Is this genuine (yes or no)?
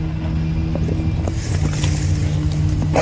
yes